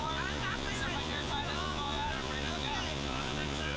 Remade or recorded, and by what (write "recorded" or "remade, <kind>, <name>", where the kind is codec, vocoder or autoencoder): remade, vocoder, Vocos